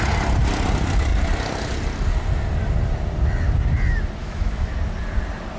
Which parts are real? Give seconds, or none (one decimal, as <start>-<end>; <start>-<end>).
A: 0.0-4.2; 4.7-5.6

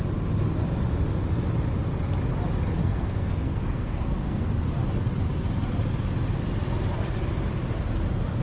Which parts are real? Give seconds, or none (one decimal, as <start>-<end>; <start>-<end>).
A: 0.0-2.8; 4.5-8.4

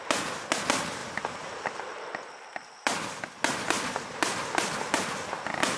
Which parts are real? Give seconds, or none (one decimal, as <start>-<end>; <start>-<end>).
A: 0.0-5.8

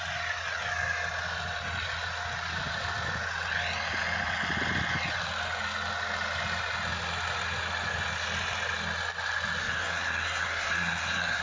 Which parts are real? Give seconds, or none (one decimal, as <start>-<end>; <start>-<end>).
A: 0.0-9.6

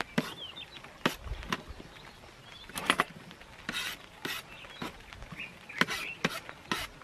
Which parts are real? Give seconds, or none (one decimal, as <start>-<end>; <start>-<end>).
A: 0.0-7.0

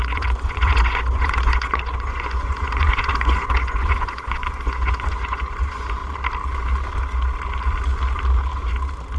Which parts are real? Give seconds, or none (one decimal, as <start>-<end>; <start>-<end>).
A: 6.0-9.2

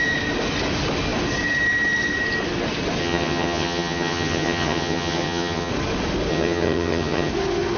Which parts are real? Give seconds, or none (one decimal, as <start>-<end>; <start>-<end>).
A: 0.0-3.0; 5.7-6.3; 7.3-7.8